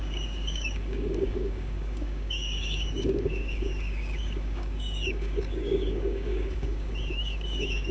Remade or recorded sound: remade